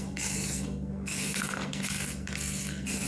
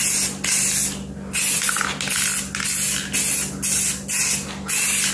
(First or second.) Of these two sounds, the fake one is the first